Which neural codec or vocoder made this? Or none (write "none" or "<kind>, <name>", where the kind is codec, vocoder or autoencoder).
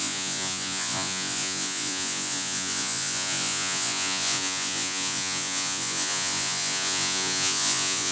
vocoder, Vocos